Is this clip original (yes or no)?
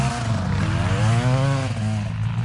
yes